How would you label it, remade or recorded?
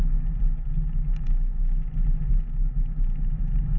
recorded